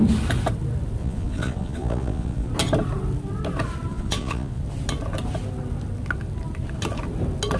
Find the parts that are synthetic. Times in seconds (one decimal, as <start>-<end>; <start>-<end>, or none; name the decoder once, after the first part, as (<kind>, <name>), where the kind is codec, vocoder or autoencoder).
1.0-2.5 (vocoder, Vocos); 3.9-4.6